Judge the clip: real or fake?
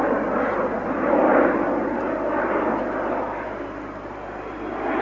real